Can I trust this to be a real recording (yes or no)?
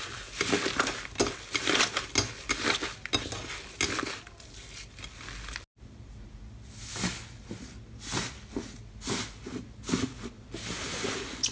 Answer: yes